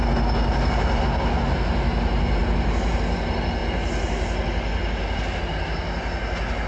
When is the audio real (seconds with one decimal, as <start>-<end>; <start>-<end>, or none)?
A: 0.0-6.7